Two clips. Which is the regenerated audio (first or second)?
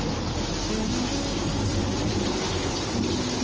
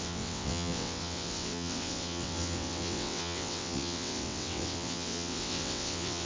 second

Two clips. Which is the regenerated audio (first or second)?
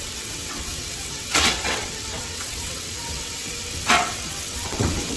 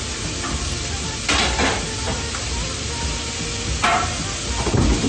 first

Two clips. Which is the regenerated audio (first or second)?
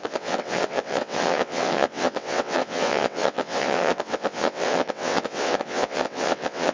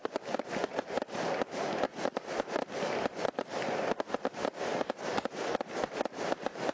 first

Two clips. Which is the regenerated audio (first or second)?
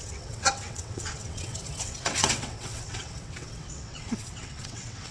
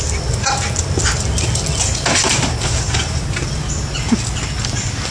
first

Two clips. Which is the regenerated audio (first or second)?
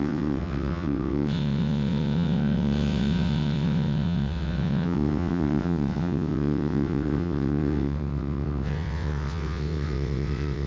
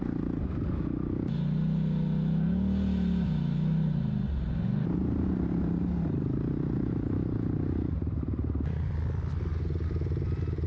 first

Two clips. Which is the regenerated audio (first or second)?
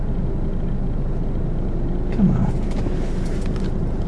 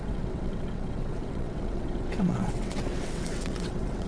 second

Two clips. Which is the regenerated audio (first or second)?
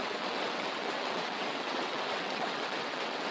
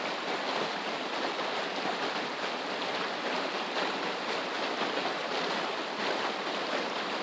first